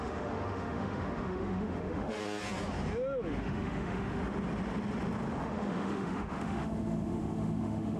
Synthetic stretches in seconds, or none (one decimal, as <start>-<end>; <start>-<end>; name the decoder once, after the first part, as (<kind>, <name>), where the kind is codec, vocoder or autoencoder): 0.0-2.2 (autoencoder, DAC-VAE); 3.4-4.2; 5.4-8.0